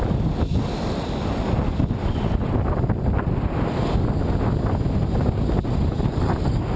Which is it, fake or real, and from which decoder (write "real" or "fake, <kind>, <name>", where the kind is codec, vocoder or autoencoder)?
real